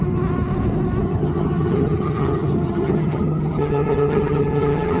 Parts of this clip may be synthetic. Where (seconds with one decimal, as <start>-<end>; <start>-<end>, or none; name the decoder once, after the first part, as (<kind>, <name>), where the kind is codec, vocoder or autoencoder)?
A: 1.0-5.0 (vocoder, HiFi-GAN)

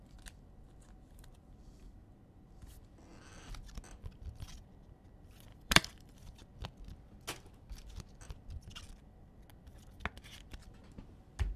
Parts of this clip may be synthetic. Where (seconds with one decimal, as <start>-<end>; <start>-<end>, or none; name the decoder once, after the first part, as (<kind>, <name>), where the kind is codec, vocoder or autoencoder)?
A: 5.5-6.2 (vocoder, BigVGAN v2)